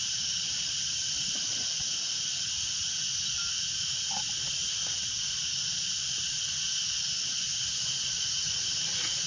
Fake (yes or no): no